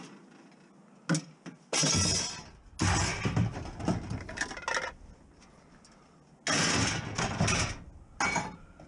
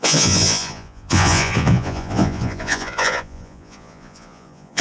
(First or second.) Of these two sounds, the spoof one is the second